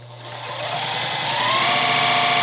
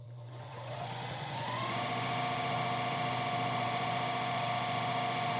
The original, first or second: first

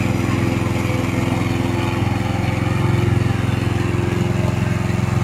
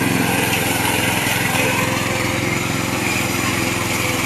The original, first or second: first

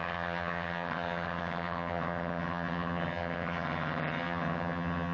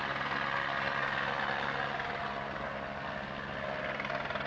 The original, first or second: second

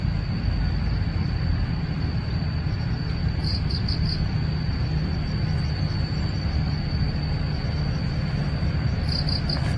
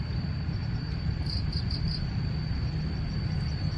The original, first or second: first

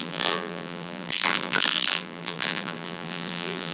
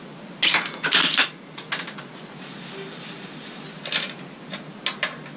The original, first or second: second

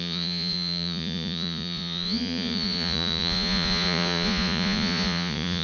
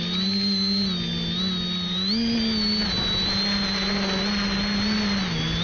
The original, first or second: second